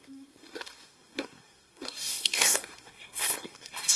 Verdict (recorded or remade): remade